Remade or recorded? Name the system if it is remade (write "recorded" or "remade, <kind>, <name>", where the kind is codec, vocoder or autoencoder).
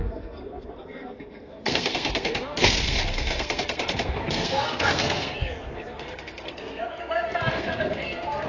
remade, codec, SNAC